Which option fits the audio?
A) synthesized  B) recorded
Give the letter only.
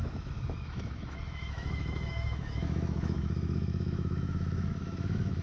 A